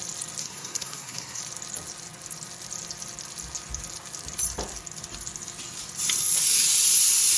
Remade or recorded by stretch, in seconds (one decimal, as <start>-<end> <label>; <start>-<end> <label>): 0.0-0.4 recorded; 0.4-1.4 remade; 1.4-7.4 recorded